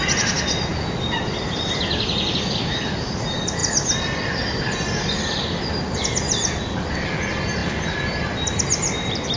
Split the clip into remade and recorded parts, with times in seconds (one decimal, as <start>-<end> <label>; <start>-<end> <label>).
0.0-9.4 recorded